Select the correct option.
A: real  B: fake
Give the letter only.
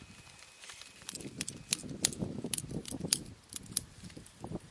A